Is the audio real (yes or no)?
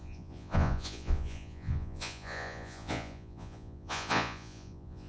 no